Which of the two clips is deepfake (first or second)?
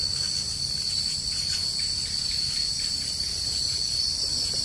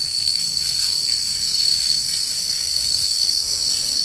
second